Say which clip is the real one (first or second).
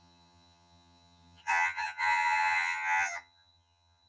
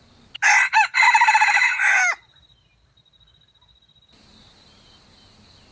second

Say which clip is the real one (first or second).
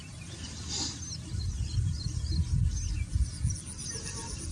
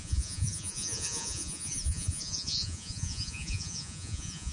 first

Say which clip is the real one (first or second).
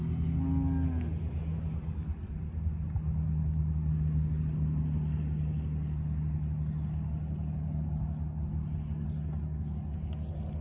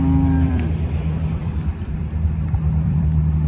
first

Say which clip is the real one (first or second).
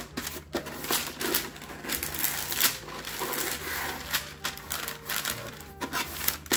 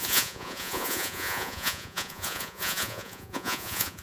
first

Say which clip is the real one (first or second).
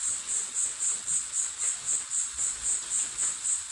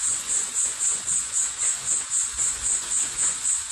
first